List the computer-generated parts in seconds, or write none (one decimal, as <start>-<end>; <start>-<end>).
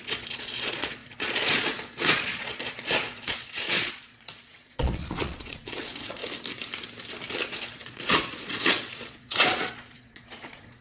0.0-6.2; 7.5-10.8